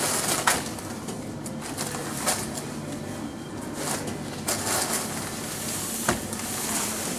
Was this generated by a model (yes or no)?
no